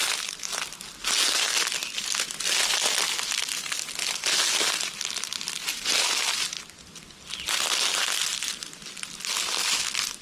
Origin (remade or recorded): recorded